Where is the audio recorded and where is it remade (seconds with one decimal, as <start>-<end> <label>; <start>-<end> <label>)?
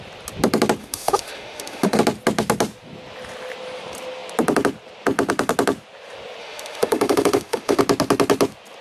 0.0-0.8 recorded; 0.8-2.0 remade; 2.0-6.4 recorded; 6.4-7.8 remade; 7.8-8.8 recorded